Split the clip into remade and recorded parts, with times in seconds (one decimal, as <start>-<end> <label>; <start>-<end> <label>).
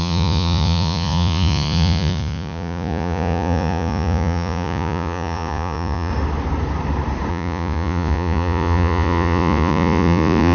0.0-6.1 remade; 6.1-7.3 recorded; 7.3-10.5 remade